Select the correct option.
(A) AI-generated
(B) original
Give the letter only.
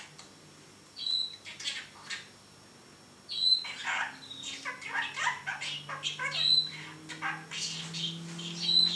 B